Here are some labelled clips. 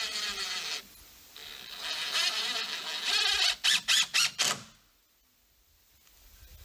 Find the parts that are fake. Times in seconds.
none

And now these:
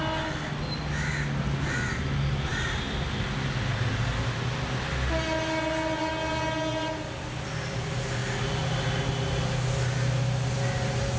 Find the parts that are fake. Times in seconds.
none

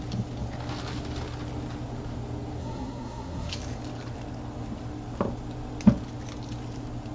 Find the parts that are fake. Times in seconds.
2.6-3.5 (codec, SNAC)

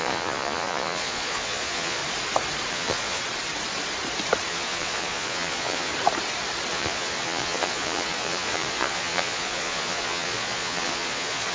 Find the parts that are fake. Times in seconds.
0.0-2.0 (vocoder, Vocos); 2.7-3.2; 4.5-5.9; 6.7-11.5

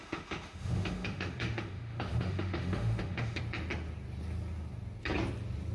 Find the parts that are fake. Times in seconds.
0.0-3.4 (autoencoder, DAC-VAE)

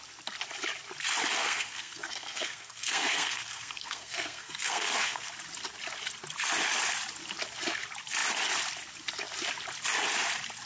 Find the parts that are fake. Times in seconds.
1.4-5.3 (codec, SNAC)